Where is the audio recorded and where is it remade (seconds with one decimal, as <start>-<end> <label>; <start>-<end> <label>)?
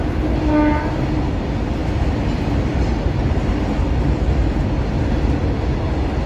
0.0-6.3 recorded